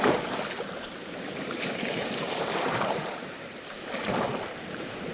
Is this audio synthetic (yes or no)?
yes